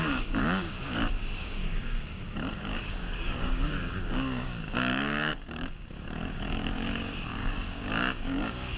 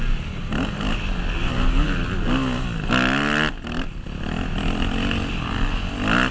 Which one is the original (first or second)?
second